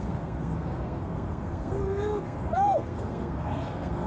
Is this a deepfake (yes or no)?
yes